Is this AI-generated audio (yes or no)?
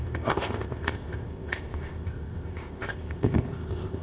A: yes